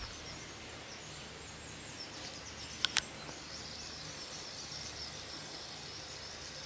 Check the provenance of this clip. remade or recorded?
recorded